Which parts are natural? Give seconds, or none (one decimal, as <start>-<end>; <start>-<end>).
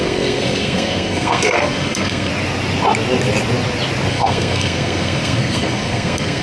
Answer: 2.3-4.1